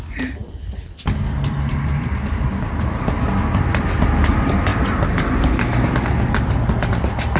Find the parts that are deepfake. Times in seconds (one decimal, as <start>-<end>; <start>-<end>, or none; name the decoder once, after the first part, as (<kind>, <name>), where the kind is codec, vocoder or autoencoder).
none